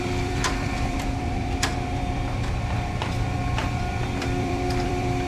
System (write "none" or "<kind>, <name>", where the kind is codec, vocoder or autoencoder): vocoder, BigVGAN v2